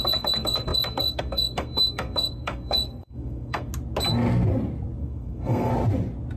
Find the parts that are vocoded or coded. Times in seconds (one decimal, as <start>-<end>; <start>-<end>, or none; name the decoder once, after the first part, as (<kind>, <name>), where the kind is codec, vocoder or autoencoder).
0.0-3.7 (codec, SNAC); 5.0-5.7